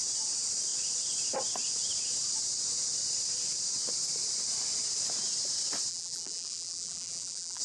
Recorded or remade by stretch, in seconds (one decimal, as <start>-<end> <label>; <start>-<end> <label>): 0.0-5.9 recorded; 5.9-7.6 remade